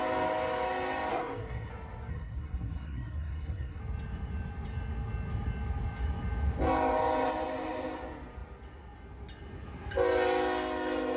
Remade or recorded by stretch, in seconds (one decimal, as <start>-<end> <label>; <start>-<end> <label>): 0.0-1.1 recorded; 1.1-1.7 remade; 1.7-2.1 recorded; 2.1-3.8 remade; 3.8-11.2 recorded